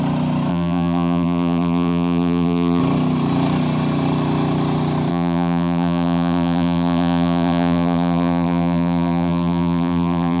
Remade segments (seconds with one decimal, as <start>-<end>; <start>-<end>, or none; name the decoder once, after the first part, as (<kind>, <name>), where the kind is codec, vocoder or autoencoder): 0.5-2.8 (vocoder, BigVGAN v2); 5.1-10.4